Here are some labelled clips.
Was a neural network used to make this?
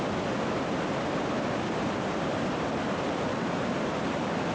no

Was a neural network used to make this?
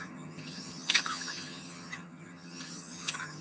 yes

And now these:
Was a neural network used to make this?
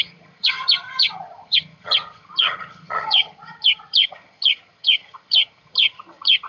yes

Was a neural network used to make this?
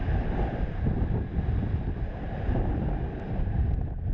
no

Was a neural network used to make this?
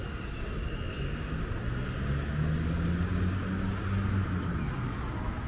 no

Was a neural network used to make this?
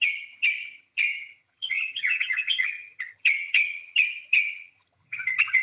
yes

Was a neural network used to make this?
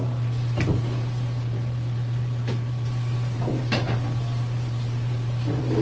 no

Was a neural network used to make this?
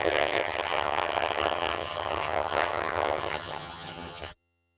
yes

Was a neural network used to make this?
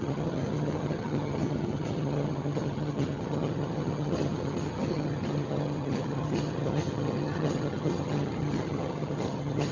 yes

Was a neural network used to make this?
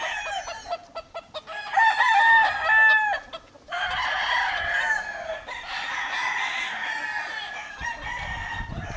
no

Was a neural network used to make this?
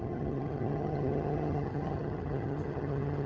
yes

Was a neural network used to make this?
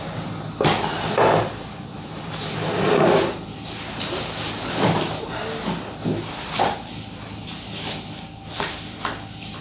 no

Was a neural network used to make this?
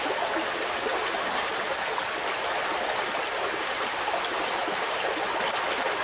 no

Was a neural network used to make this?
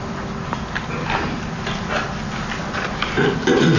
no